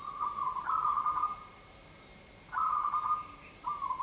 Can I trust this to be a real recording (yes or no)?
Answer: yes